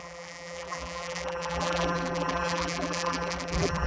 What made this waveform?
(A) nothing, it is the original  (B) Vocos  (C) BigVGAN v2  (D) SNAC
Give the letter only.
C